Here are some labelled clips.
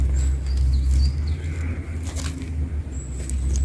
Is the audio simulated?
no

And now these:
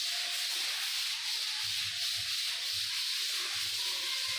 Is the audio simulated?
no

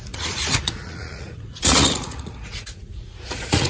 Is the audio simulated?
yes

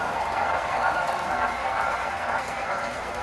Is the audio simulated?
yes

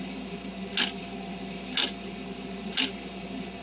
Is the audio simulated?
no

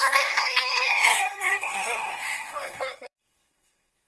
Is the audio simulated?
yes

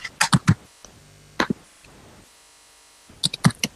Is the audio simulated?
no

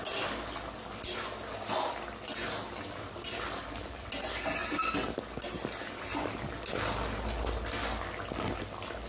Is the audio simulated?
no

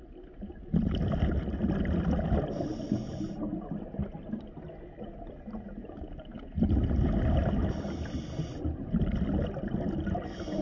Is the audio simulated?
no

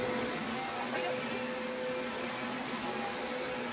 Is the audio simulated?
no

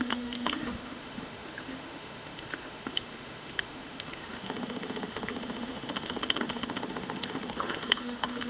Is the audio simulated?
yes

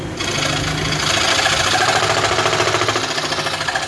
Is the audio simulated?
no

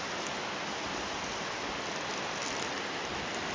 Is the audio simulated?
no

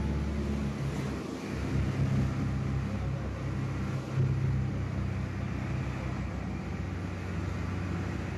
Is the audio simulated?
no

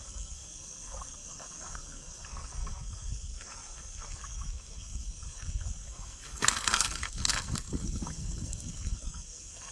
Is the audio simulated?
yes